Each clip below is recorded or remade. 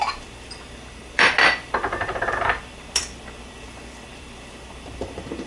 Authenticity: remade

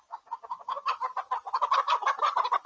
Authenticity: recorded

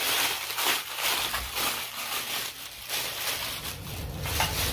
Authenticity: remade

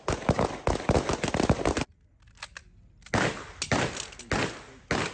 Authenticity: recorded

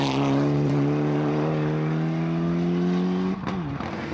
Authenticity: recorded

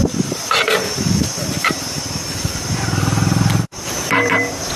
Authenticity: remade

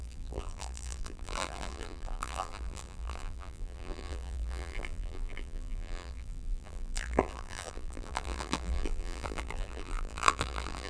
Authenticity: remade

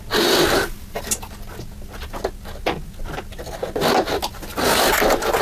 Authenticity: recorded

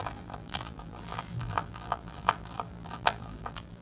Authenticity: remade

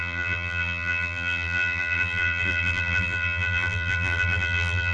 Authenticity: remade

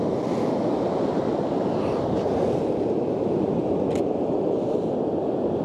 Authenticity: recorded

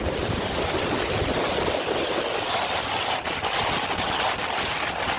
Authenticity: recorded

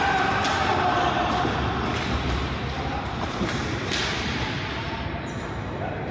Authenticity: remade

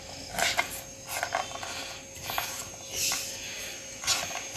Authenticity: recorded